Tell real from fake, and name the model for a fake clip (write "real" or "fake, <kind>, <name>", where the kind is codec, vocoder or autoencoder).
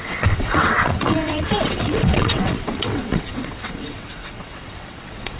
fake, vocoder, WaveNeXt